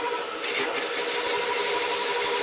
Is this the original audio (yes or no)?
yes